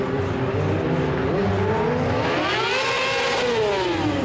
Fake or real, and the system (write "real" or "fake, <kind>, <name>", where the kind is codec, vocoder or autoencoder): real